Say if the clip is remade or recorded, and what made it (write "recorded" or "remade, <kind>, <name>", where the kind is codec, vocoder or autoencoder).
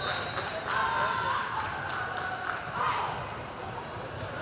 recorded